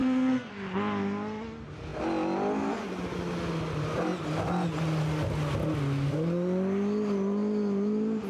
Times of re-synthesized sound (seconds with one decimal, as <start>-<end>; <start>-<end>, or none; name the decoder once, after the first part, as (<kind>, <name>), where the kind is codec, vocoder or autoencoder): 0.0-0.5 (codec, SNAC)